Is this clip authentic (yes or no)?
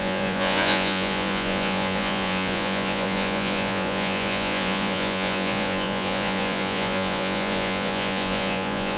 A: no